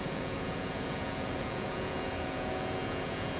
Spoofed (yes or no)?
yes